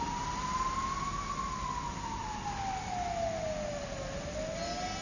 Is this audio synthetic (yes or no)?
no